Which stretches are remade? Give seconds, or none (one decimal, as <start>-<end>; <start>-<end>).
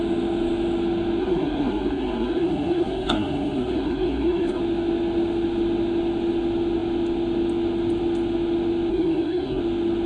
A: 1.2-4.6; 8.9-9.6